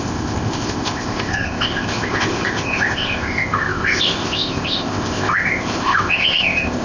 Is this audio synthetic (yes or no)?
yes